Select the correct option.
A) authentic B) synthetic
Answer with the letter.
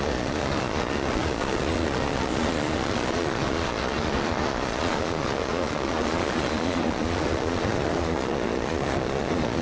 B